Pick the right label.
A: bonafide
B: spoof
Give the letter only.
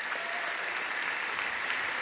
A